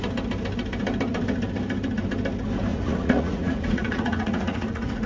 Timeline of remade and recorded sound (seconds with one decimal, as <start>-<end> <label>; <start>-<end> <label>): 0.0-2.7 recorded; 2.7-5.1 remade